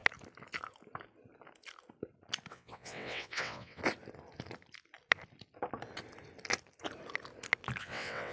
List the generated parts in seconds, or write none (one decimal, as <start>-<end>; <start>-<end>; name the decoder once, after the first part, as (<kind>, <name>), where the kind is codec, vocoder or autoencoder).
2.5-3.8 (vocoder, WaveNeXt); 7.8-8.3

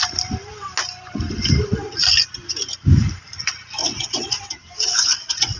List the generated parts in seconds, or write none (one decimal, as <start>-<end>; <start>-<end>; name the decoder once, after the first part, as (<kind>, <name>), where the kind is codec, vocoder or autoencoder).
3.8-5.6 (vocoder, WaveNeXt)

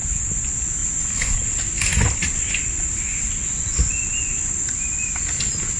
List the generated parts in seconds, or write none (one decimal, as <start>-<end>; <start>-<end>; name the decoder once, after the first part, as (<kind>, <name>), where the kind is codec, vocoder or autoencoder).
none

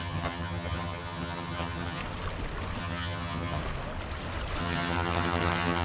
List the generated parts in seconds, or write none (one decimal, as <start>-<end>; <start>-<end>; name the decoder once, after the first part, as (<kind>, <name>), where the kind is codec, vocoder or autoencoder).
0.0-2.0 (vocoder, HiFi-GAN); 2.8-3.6; 4.6-5.8

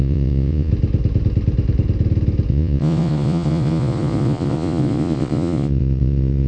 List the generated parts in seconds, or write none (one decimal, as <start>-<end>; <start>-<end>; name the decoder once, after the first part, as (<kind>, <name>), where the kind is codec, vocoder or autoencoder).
0.0-0.7 (vocoder, Vocos); 2.5-6.5

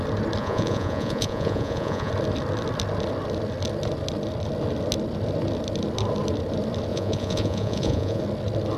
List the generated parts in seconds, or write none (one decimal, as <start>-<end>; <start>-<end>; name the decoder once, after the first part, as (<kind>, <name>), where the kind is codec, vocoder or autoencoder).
0.4-2.1 (vocoder, Vocos); 6.9-8.2